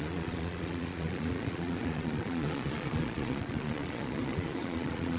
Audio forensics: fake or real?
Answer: fake